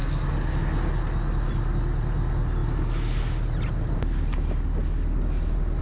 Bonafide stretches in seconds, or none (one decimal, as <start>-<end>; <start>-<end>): 0.0-5.8